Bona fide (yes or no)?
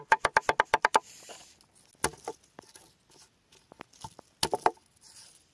yes